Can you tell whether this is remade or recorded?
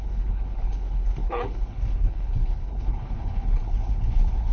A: remade